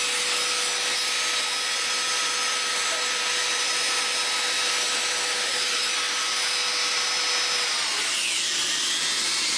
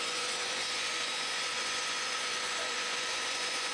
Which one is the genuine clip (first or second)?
first